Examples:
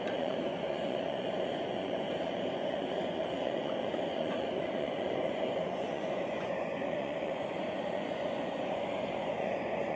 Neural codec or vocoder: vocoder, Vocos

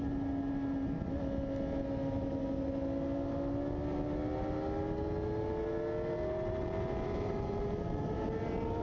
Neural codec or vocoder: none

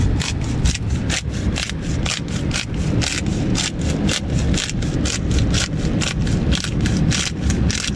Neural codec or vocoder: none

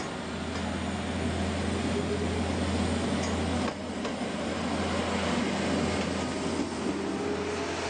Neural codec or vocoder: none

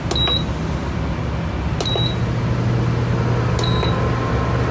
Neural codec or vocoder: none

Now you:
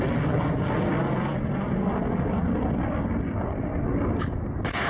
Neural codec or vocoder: none